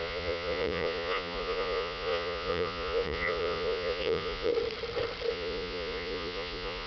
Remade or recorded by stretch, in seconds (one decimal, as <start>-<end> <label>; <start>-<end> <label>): 0.0-4.5 remade; 4.5-5.3 recorded; 5.3-6.9 remade